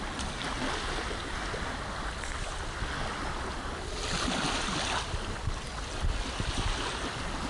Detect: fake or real real